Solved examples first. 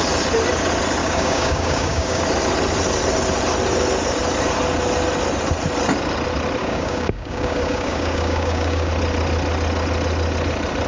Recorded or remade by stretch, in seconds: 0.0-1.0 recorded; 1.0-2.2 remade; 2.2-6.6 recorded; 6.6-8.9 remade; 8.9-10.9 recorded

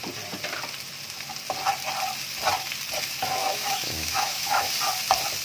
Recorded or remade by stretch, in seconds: 0.0-3.4 recorded; 3.4-4.7 remade; 4.7-5.4 recorded

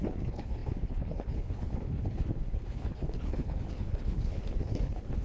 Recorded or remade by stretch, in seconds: 0.0-5.2 remade

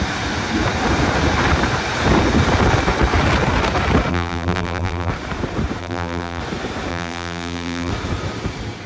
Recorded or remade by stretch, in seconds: 0.0-4.1 recorded; 4.1-5.1 remade; 5.1-5.8 recorded; 5.8-6.4 remade; 6.4-6.9 recorded; 6.9-7.9 remade; 7.9-8.9 recorded

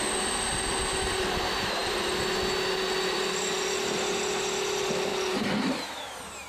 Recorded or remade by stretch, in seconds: 0.0-5.1 recorded; 5.1-6.5 remade

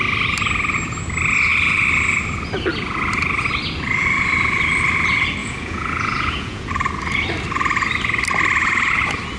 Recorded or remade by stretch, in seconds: 0.0-5.4 recorded; 5.4-6.7 remade; 6.7-9.4 recorded

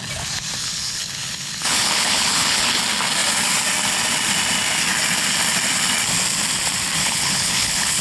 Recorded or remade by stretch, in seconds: 0.0-0.6 recorded; 0.6-2.8 remade; 2.8-7.0 recorded; 7.0-8.0 remade